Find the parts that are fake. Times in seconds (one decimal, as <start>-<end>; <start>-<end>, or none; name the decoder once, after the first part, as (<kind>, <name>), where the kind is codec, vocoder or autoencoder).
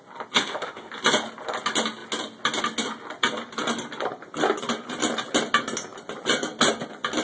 0.4-0.9 (autoencoder, DAC-VAE)